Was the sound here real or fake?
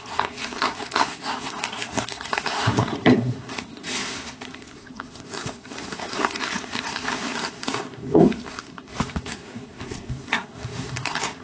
fake